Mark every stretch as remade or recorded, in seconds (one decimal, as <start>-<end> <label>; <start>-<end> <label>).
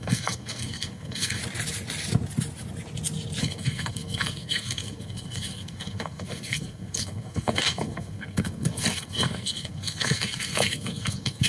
0.0-1.4 remade; 1.4-3.4 recorded; 3.4-11.5 remade